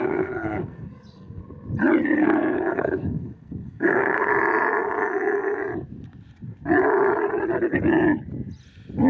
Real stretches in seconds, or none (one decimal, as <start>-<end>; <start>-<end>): 1.4-2.2; 4.3-9.1